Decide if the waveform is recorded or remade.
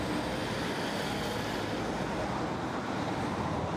recorded